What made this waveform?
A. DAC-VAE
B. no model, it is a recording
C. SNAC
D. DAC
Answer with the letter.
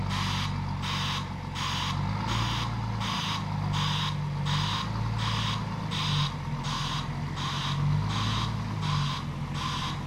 B